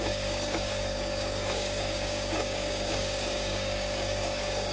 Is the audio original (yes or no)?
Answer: no